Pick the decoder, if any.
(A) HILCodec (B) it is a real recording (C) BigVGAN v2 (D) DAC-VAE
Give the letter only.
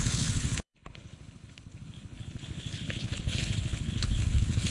A